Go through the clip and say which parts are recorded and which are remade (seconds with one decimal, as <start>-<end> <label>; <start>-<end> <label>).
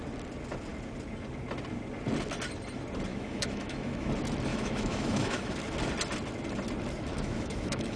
0.0-3.1 recorded; 3.1-4.1 remade; 4.1-4.5 recorded; 4.5-5.5 remade; 5.5-7.1 recorded; 7.1-8.0 remade